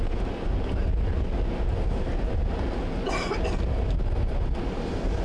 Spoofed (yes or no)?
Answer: no